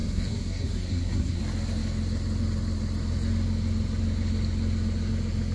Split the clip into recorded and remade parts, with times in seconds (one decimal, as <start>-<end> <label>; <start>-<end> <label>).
0.0-1.4 remade; 1.4-5.5 recorded